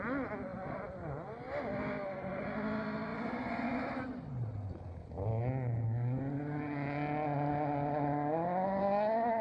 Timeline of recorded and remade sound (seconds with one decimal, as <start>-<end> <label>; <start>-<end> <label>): 0.0-3.1 recorded; 3.1-3.6 remade; 3.6-9.4 recorded